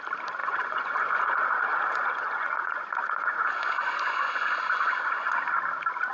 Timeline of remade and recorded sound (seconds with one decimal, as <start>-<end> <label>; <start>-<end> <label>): 0.0-0.4 recorded; 0.4-1.2 remade; 1.2-1.7 recorded; 1.7-5.4 remade; 5.4-6.1 recorded